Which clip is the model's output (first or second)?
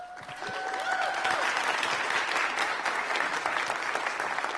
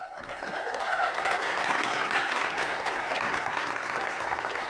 second